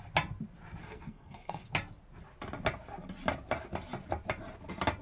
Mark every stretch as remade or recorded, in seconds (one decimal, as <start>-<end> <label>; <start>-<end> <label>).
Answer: 0.0-0.8 recorded; 0.8-1.7 remade; 1.7-5.0 recorded